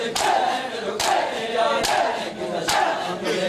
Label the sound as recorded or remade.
recorded